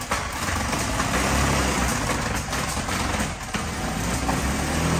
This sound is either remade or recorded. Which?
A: recorded